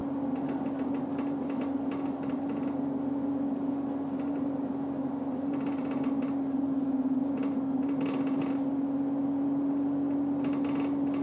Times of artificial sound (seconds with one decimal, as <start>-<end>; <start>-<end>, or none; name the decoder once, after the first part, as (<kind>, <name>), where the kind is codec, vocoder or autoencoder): none